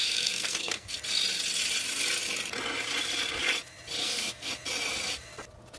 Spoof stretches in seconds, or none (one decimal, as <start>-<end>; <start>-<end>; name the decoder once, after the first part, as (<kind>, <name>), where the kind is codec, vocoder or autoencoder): 0.0-1.0 (codec, SNAC); 4.0-4.5